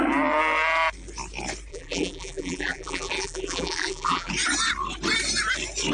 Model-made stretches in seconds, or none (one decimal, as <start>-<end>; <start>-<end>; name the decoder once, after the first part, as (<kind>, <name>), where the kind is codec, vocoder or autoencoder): 1.7-4.3 (vocoder, BigVGAN v2)